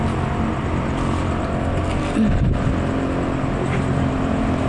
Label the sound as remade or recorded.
recorded